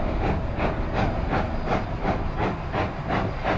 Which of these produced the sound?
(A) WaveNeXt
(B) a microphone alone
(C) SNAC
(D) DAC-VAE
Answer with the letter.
B